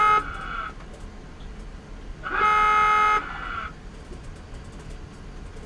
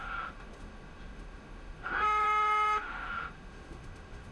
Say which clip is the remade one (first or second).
second